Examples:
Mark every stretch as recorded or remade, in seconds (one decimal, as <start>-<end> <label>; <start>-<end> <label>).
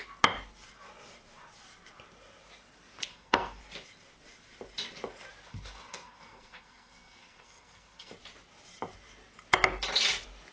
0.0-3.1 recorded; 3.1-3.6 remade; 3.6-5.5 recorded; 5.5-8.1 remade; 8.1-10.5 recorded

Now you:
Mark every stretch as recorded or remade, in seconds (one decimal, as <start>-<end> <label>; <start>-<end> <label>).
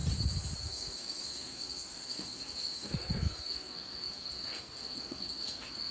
0.0-0.6 recorded; 0.6-5.9 remade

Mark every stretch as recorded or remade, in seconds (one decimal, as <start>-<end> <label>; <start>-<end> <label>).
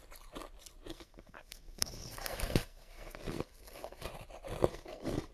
0.0-0.9 recorded; 0.9-4.1 remade; 4.1-4.7 recorded; 4.7-5.3 remade